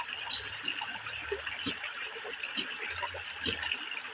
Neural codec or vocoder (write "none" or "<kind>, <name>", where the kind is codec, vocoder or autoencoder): none